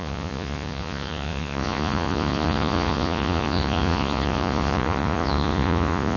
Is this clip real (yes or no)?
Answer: no